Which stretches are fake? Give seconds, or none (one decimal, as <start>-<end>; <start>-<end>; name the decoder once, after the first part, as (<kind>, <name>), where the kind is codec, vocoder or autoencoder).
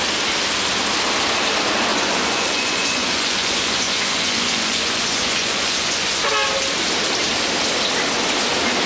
1.9-6.3 (vocoder, Vocos)